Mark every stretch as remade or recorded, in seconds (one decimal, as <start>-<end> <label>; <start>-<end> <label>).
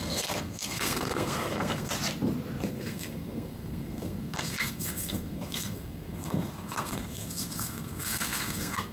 0.0-1.9 remade; 1.9-2.7 recorded; 2.7-8.9 remade